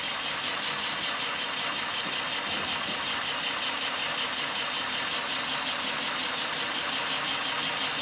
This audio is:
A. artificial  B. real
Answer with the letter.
B